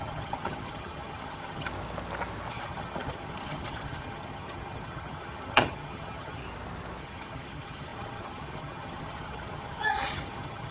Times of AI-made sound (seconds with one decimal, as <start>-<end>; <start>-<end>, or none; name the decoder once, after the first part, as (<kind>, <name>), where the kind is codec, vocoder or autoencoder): 0.0-1.7 (vocoder, HiFi-GAN); 2.5-6.4; 7.0-10.7